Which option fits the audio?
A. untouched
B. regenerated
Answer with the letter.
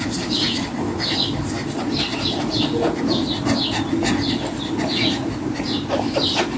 A